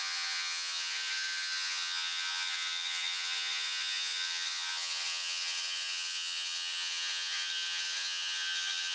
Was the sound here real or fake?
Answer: fake